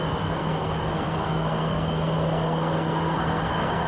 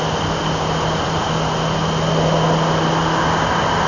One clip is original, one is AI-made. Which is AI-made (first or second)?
first